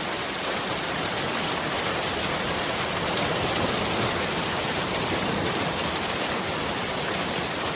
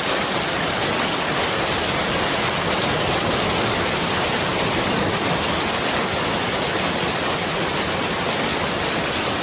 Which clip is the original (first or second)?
second